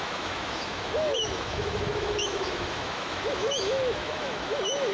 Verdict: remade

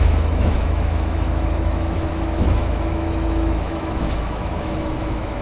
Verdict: remade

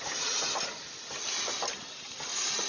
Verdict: recorded